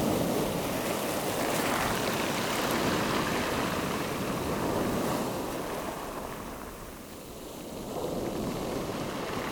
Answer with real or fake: real